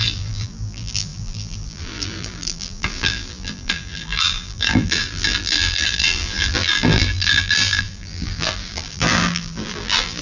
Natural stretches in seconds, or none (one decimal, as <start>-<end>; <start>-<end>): none